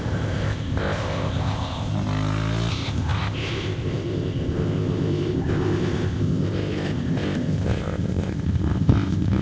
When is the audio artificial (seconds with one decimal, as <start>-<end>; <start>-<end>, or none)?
0.0-1.9; 2.7-9.4